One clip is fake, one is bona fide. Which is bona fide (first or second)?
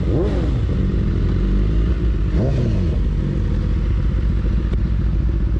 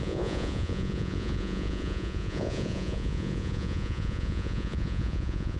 first